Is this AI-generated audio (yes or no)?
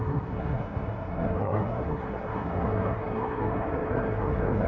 yes